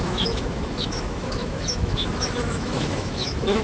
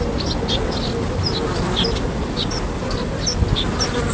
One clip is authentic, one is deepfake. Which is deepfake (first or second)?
first